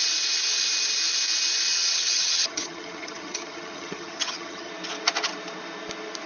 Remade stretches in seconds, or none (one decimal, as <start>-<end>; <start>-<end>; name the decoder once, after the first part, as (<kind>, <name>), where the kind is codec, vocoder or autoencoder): 1.7-4.7 (vocoder, HiFi-GAN)